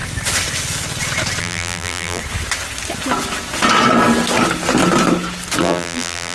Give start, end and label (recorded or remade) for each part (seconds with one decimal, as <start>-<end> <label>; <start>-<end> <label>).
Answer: 0.0-1.4 recorded; 1.4-2.2 remade; 2.2-5.6 recorded; 5.6-6.3 remade